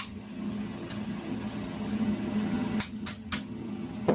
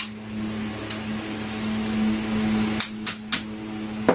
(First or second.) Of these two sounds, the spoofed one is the first